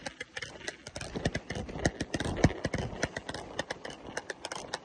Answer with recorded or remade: recorded